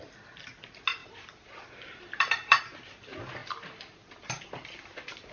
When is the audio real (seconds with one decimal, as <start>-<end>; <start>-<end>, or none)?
0.0-1.0; 2.6-3.4; 4.4-5.3